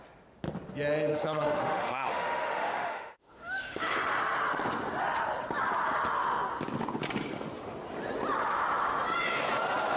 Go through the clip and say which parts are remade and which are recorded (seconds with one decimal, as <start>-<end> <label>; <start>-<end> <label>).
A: 0.0-1.1 recorded; 1.1-4.0 remade; 4.0-10.0 recorded

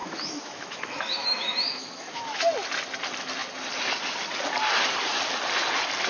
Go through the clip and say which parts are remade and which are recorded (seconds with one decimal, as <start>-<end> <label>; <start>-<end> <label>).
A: 0.0-2.4 remade; 2.4-6.1 recorded

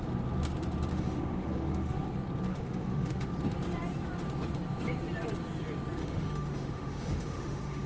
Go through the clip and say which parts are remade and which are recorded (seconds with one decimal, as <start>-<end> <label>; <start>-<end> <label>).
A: 0.0-0.9 recorded; 0.9-2.0 remade; 2.0-2.5 recorded; 2.5-3.3 remade; 3.3-6.0 recorded; 6.0-7.9 remade

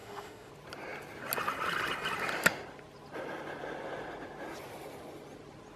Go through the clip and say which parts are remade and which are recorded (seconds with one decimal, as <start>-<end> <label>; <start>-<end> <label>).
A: 0.0-0.5 remade; 0.5-5.8 recorded

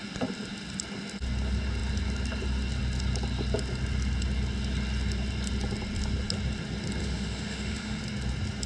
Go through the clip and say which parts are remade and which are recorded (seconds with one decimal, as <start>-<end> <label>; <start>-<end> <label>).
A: 0.0-7.0 recorded; 7.0-8.0 remade; 8.0-8.7 recorded

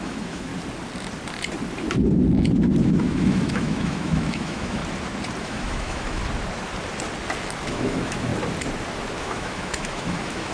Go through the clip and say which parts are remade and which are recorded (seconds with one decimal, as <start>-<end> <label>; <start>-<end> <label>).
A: 0.0-0.5 remade; 0.5-3.0 recorded; 3.0-4.8 remade; 4.8-5.4 recorded; 5.4-6.2 remade; 6.2-7.7 recorded; 7.7-8.3 remade; 8.3-9.2 recorded; 9.2-10.5 remade

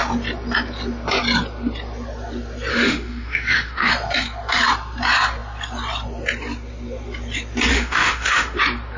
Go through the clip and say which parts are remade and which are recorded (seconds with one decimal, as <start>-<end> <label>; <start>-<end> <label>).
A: 0.0-2.7 recorded; 2.7-3.9 remade; 3.9-7.7 recorded; 7.7-8.6 remade; 8.6-9.0 recorded